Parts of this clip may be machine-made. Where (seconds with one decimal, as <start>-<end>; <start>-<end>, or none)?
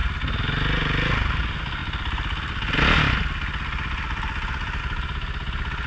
none